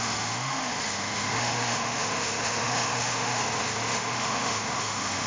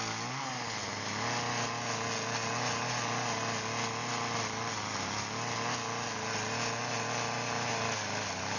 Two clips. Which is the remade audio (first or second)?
first